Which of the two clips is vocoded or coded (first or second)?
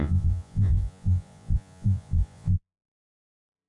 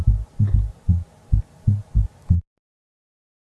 first